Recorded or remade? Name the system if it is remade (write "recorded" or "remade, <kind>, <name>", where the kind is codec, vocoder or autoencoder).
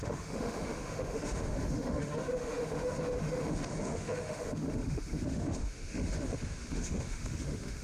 remade, autoencoder, DAC-VAE